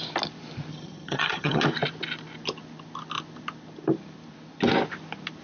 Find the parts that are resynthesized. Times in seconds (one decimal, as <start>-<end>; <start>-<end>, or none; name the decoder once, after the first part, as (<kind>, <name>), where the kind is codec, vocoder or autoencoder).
0.7-1.6 (vocoder, HiFi-GAN)